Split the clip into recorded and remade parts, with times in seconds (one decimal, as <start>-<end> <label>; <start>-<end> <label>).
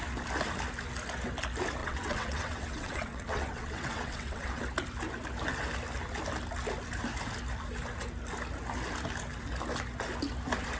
0.0-1.8 recorded; 1.8-4.6 remade; 4.6-10.8 recorded